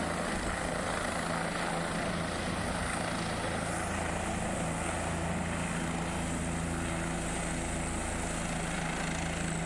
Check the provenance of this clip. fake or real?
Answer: real